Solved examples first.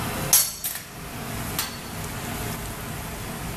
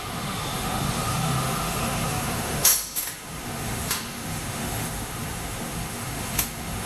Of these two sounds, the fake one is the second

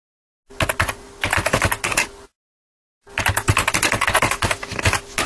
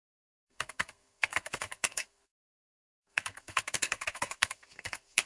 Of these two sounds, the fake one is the second